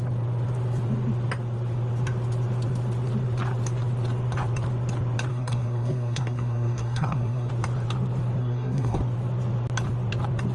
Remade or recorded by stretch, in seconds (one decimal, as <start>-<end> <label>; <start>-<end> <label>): 0.0-5.3 recorded; 5.3-7.5 remade; 7.5-8.4 recorded; 8.4-9.0 remade; 9.0-10.5 recorded

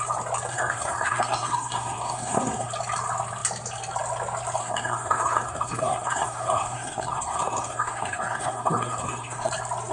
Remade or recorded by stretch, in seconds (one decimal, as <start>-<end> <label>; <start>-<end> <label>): 0.0-0.5 recorded; 0.5-2.7 remade; 2.7-4.6 recorded; 4.6-9.5 remade; 9.5-9.9 recorded

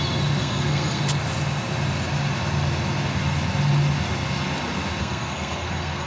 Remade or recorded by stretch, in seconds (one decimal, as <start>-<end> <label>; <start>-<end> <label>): 0.0-0.4 recorded; 0.4-1.0 remade; 1.0-5.0 recorded; 5.0-6.1 remade

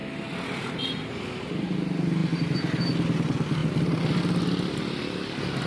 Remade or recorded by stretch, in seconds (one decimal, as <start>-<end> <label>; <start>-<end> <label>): 0.0-5.7 recorded

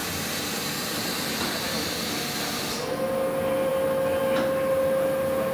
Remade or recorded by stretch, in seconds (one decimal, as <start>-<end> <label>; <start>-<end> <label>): 0.0-5.5 recorded

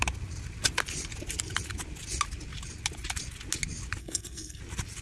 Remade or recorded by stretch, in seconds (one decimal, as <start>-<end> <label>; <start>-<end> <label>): 0.0-4.0 recorded; 4.0-4.6 remade; 4.6-5.0 recorded

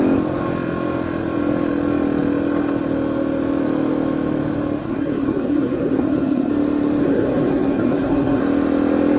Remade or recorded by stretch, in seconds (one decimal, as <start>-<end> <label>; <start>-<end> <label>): 0.0-4.8 recorded; 4.8-6.5 remade; 6.5-7.0 recorded; 7.0-8.4 remade; 8.4-9.2 recorded

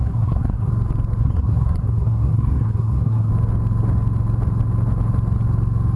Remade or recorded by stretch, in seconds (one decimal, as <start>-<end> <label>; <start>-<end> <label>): 0.0-0.7 remade; 0.7-1.2 recorded; 1.2-3.3 remade; 3.3-6.0 recorded